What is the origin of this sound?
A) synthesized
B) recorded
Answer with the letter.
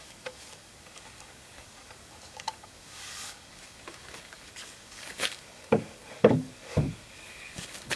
A